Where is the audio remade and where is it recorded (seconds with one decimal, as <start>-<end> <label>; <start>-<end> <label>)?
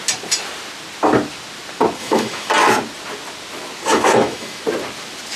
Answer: 0.0-2.0 recorded; 2.0-2.5 remade; 2.5-3.9 recorded; 3.9-4.6 remade; 4.6-5.4 recorded